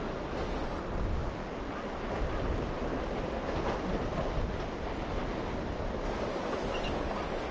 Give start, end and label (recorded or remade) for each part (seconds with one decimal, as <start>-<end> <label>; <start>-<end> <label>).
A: 0.0-7.5 recorded